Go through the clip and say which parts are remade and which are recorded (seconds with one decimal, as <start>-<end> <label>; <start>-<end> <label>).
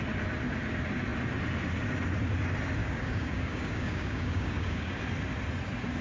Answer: 0.0-2.8 recorded; 2.8-5.0 remade; 5.0-6.0 recorded